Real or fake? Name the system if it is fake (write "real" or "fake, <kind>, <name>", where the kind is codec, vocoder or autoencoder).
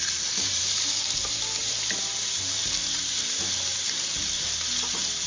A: fake, vocoder, BigVGAN v2